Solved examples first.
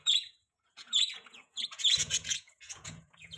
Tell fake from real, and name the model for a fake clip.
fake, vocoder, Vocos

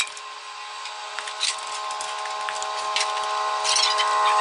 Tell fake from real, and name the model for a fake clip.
real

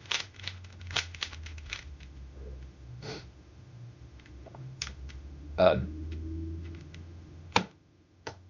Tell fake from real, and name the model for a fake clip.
fake, autoencoder, DAC-VAE